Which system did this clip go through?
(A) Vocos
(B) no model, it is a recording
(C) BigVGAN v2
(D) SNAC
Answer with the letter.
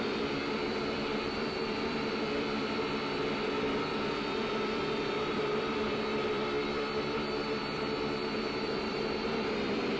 C